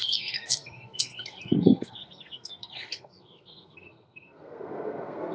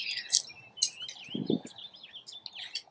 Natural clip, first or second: second